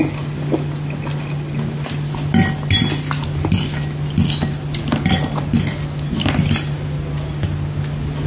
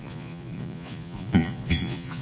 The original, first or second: first